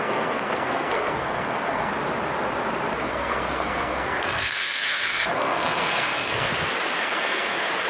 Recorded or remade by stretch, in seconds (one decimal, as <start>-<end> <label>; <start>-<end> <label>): 0.0-1.9 remade; 1.9-3.1 recorded; 3.1-6.5 remade; 6.5-7.0 recorded; 7.0-7.9 remade